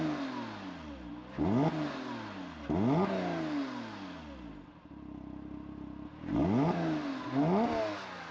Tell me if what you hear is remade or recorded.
recorded